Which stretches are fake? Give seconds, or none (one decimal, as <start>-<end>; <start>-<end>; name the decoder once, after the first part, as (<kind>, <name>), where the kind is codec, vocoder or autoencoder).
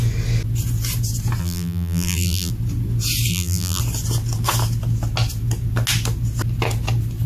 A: 1.4-2.5 (vocoder, BigVGAN v2); 3.3-3.8